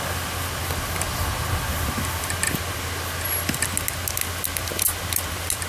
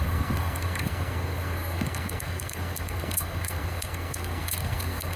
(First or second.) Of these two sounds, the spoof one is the second